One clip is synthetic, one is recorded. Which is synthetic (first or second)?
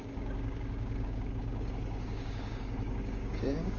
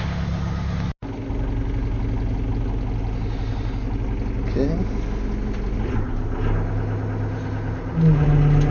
first